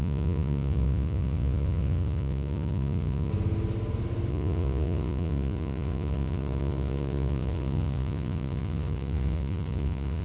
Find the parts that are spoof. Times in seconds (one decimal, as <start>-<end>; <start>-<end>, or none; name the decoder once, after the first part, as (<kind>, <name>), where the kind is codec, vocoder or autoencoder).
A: 0.0-3.3 (vocoder, Vocos); 4.3-10.2